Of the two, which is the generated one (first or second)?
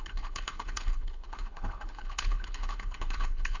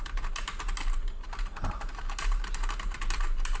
first